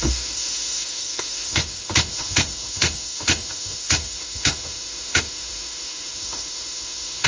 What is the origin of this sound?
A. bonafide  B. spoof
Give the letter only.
B